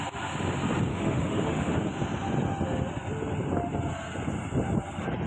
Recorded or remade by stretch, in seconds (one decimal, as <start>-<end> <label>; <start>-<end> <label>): 0.0-0.9 recorded; 0.9-1.7 remade; 1.7-5.3 recorded